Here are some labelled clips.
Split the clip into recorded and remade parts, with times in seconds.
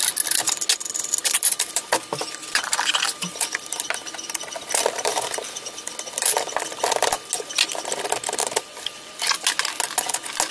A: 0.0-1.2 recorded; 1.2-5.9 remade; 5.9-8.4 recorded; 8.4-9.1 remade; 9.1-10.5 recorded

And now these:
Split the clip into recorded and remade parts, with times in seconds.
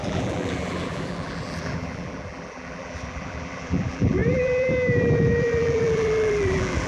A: 0.0-6.9 remade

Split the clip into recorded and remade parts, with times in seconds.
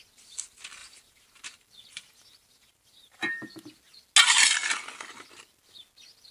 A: 0.0-0.8 recorded; 0.8-3.7 remade; 3.7-6.3 recorded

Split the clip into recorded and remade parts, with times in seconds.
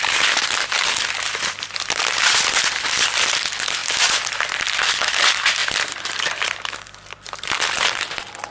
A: 0.0-3.8 remade; 3.8-4.6 recorded; 4.6-8.5 remade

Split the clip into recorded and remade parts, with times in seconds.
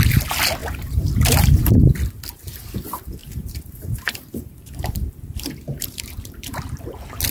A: 0.0-0.6 recorded; 0.6-1.8 remade; 1.8-3.2 recorded; 3.2-6.6 remade; 6.6-7.3 recorded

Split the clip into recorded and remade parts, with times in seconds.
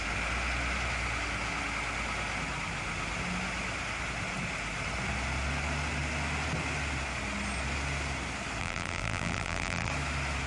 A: 0.0-8.6 recorded; 8.6-9.9 remade; 9.9-10.5 recorded